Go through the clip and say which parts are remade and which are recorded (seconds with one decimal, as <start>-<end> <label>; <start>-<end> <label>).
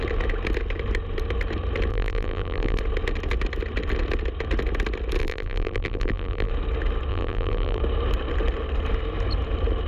0.0-1.9 recorded; 1.9-2.8 remade; 2.8-5.2 recorded; 5.2-6.5 remade; 6.5-7.1 recorded; 7.1-7.8 remade; 7.8-9.9 recorded